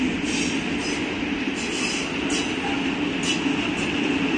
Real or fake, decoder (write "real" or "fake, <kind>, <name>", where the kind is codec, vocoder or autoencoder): real